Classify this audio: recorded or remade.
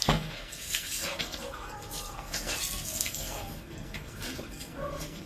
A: remade